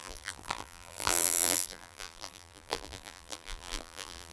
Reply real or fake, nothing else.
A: fake